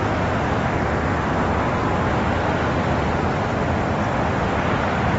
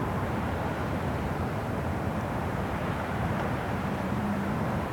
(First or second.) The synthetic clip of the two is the second